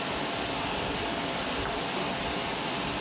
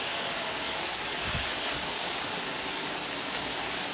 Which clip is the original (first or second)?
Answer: first